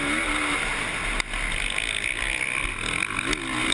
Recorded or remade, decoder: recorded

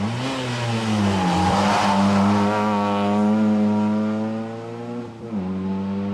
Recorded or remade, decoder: recorded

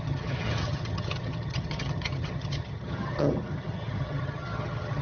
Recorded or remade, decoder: remade, vocoder, HiFi-GAN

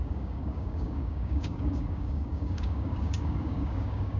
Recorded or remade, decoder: remade, codec, DAC